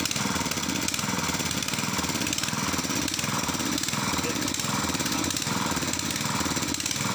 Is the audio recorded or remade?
remade